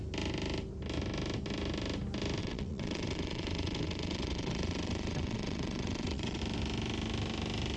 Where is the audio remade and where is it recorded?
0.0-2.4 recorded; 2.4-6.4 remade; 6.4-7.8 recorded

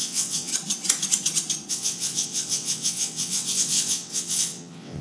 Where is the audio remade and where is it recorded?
0.0-0.5 remade; 0.5-1.7 recorded; 1.7-5.0 remade